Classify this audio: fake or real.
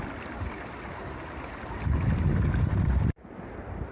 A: real